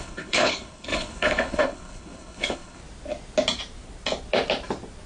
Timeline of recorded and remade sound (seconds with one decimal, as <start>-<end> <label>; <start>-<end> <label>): 0.0-2.8 remade; 2.8-5.1 recorded